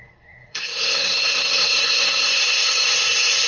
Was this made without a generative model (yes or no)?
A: no